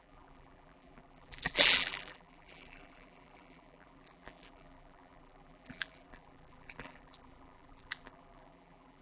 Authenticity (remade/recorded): remade